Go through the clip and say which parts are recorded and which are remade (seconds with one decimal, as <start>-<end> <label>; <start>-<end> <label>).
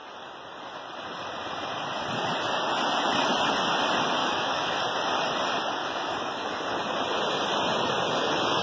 0.0-4.2 recorded; 4.2-4.8 remade; 4.8-5.8 recorded; 5.8-6.5 remade; 6.5-8.6 recorded